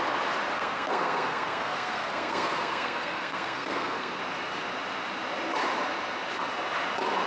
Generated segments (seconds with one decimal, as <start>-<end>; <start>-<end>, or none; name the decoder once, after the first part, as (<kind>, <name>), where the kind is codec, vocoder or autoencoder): 0.5-4.2 (codec, SNAC)